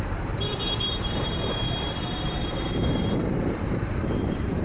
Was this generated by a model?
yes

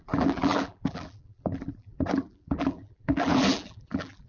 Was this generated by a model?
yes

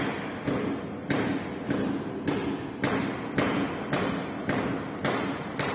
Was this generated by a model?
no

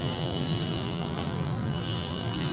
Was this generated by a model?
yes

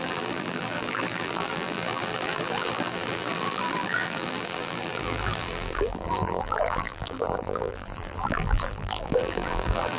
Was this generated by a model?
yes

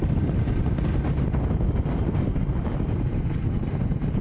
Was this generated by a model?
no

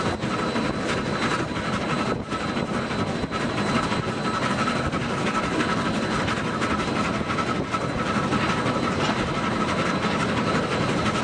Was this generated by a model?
no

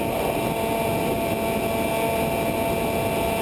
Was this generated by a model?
no